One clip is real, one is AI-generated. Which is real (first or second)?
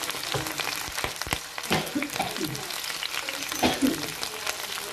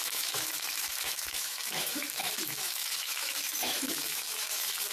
first